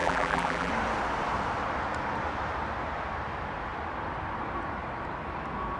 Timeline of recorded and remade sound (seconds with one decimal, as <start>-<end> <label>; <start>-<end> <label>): 0.0-0.7 remade; 0.7-5.8 recorded